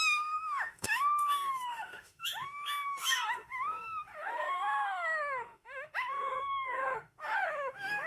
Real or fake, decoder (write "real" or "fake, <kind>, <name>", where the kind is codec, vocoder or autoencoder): fake, autoencoder, DAC-VAE